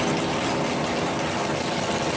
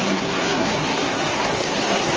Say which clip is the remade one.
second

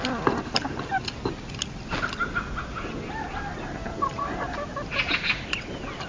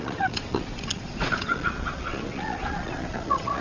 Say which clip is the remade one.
second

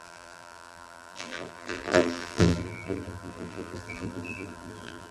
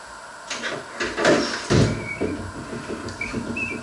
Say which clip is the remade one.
first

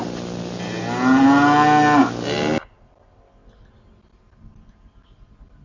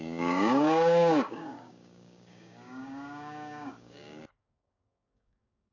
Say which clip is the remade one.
second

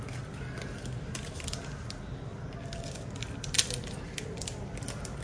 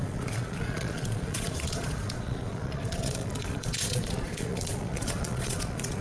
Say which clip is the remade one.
second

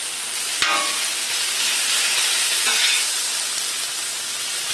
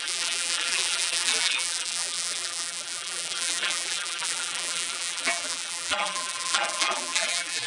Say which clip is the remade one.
second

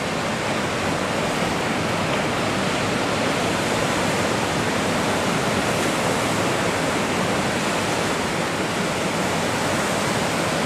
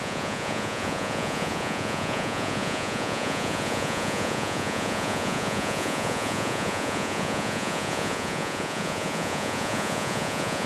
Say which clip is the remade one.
second